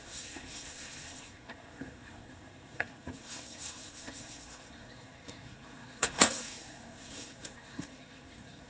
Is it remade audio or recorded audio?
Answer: remade